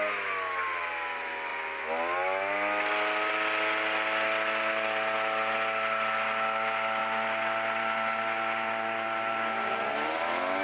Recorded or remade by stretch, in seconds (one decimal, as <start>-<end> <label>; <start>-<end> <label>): 0.0-10.6 recorded